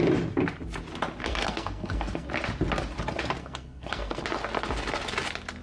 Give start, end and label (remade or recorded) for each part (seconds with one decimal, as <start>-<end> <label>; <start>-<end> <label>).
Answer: 0.0-1.2 recorded; 1.2-2.3 remade; 2.3-3.4 recorded; 3.4-4.2 remade; 4.2-5.6 recorded